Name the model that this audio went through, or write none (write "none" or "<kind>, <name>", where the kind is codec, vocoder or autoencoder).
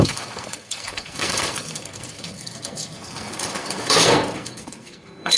codec, SNAC